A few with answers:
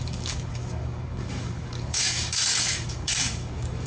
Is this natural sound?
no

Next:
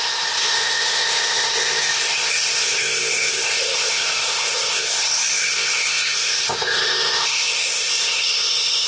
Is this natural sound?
no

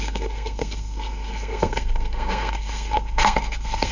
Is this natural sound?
no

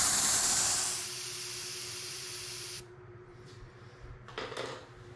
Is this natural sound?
no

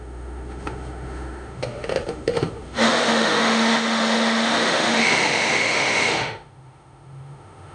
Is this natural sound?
no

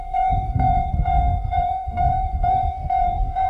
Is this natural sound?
no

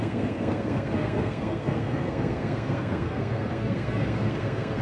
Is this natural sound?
no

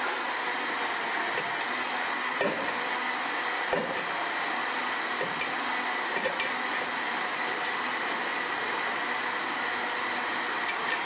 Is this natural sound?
yes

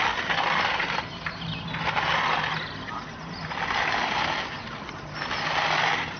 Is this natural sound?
yes